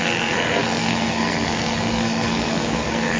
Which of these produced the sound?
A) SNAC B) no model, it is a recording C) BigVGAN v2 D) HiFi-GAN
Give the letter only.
A